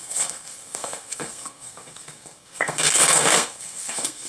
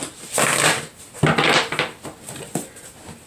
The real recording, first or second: second